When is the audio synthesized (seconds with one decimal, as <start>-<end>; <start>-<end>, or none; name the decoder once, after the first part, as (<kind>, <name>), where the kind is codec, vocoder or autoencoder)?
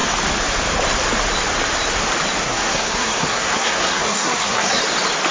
2.4-4.8 (codec, SNAC)